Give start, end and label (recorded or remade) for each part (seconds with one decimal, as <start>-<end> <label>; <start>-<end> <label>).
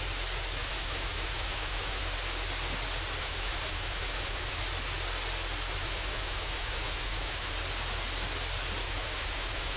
0.0-0.6 recorded; 0.6-2.0 remade; 2.0-3.2 recorded; 3.2-4.6 remade; 4.6-5.8 recorded; 5.8-7.5 remade; 7.5-8.8 recorded; 8.8-9.8 remade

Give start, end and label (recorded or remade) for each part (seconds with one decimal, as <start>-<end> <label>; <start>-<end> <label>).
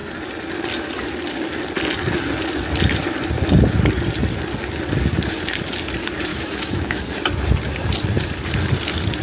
0.0-6.3 recorded; 6.3-7.0 remade; 7.0-9.2 recorded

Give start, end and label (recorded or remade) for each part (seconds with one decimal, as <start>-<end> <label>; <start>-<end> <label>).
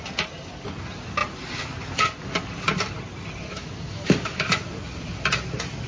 0.0-3.5 recorded; 3.5-4.6 remade; 4.6-5.9 recorded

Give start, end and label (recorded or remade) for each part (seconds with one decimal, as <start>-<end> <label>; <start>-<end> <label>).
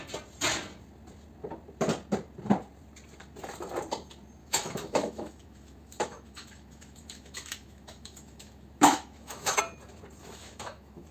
0.0-4.4 recorded; 4.4-9.6 remade; 9.6-10.2 recorded; 10.2-11.1 remade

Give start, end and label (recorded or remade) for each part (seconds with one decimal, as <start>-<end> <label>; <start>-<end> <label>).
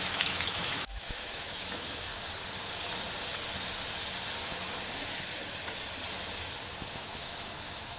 0.0-2.1 remade; 2.1-6.9 recorded; 6.9-8.0 remade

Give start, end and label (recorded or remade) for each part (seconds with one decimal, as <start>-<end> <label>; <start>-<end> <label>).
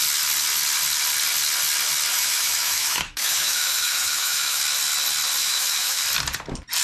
0.0-2.1 recorded; 2.1-4.6 remade; 4.6-5.4 recorded; 5.4-6.0 remade; 6.0-6.8 recorded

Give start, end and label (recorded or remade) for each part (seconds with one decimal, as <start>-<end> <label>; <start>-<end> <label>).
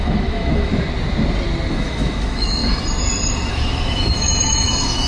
0.0-0.7 remade; 0.7-1.7 recorded; 1.7-2.6 remade; 2.6-3.5 recorded; 3.5-5.1 remade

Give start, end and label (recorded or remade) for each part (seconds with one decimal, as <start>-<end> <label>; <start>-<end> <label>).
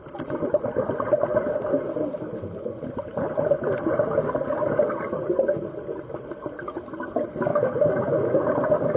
0.0-7.5 recorded; 7.5-8.4 remade; 8.4-9.0 recorded